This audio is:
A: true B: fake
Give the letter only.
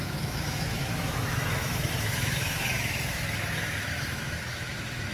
B